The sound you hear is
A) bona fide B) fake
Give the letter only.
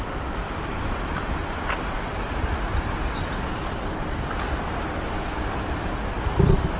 A